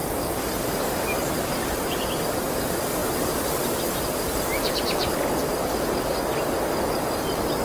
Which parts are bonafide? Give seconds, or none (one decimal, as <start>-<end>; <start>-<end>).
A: 0.0-7.6